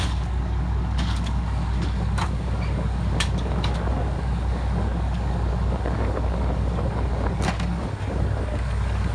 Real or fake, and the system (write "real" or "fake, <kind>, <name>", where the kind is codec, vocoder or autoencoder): fake, codec, DAC